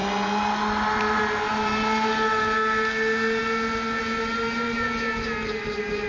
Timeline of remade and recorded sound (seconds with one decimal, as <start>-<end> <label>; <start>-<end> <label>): 0.0-6.1 recorded